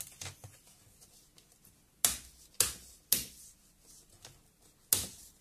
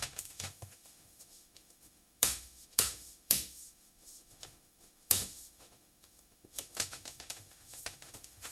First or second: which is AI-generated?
second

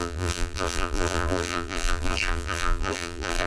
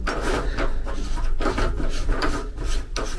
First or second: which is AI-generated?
first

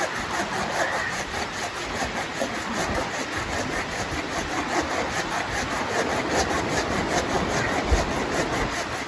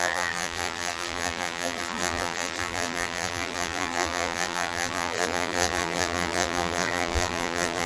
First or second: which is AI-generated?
second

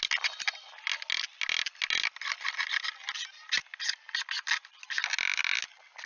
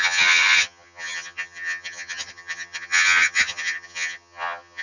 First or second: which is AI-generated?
second